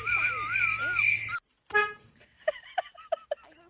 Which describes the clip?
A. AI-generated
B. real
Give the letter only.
B